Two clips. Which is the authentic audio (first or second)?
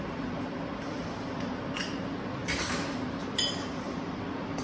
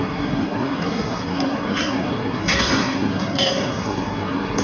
first